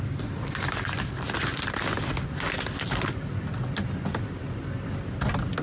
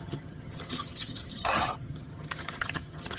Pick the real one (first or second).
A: first